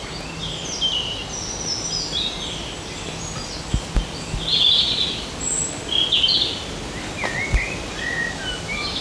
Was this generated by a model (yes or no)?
no